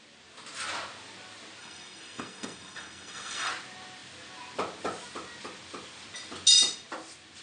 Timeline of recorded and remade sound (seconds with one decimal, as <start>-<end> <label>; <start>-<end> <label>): 0.0-1.6 recorded; 1.6-3.5 remade; 3.5-7.4 recorded